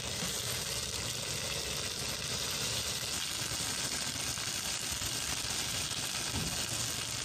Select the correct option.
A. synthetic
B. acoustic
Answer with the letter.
B